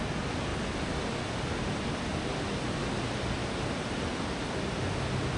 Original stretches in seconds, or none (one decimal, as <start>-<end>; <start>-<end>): 0.0-5.4